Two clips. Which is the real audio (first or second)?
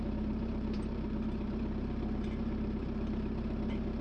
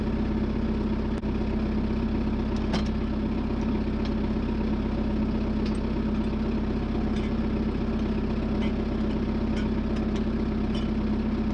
second